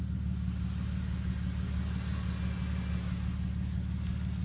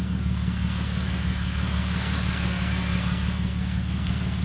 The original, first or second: first